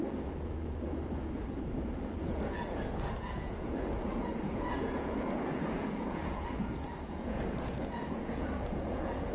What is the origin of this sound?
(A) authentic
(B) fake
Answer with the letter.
B